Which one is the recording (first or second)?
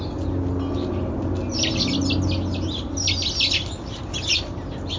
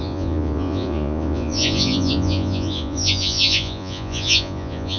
first